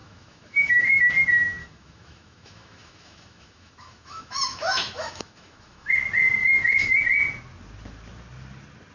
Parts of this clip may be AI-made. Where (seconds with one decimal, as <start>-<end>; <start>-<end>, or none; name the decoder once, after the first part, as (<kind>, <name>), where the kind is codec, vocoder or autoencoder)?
0.0-1.1 (autoencoder, DAC-VAE); 1.6-5.9; 6.4-7.0